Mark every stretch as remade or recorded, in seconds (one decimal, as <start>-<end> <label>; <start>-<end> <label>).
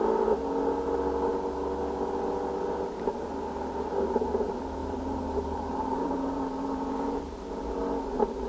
0.0-4.8 recorded; 4.8-7.8 remade; 7.8-8.5 recorded